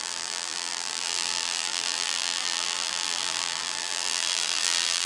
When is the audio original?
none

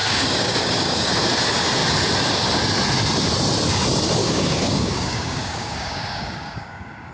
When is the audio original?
1.1-4.2

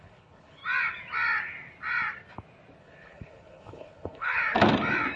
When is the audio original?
0.6-2.8; 4.4-5.2

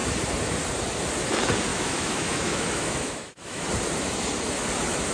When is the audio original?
0.0-1.7; 3.7-5.1

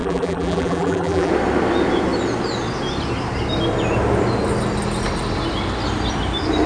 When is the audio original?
1.3-6.7